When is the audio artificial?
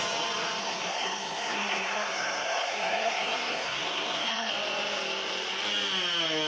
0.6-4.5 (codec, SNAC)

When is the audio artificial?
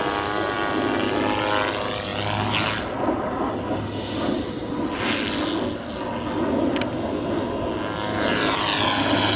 none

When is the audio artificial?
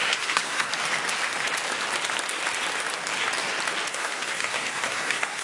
0.0-0.7 (codec, SNAC); 3.9-5.4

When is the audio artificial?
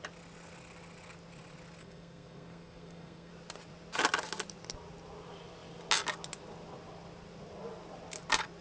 1.8-3.3 (codec, SNAC)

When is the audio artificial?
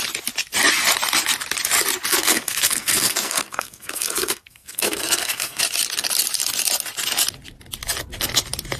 2.1-5.6 (codec, SNAC)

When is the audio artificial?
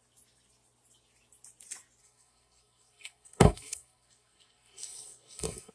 2.0-5.7 (codec, SNAC)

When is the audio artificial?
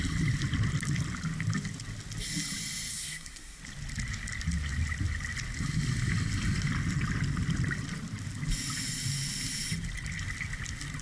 2.9-3.6 (codec, SNAC)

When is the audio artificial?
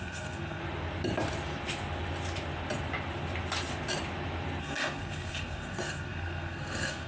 0.0-0.6 (codec, SNAC); 4.6-7.1